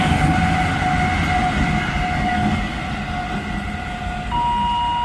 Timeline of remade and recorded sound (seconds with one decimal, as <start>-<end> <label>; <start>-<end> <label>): 0.0-2.1 recorded; 2.1-2.8 remade; 2.8-5.0 recorded